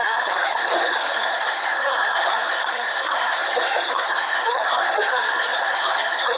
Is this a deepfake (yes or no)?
yes